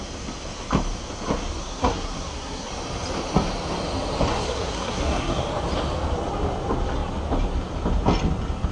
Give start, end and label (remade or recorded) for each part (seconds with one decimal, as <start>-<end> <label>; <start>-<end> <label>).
0.0-1.6 recorded; 1.6-2.7 remade; 2.7-4.3 recorded; 4.3-5.4 remade; 5.4-8.7 recorded